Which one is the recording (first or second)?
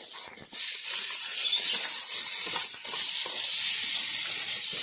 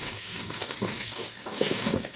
first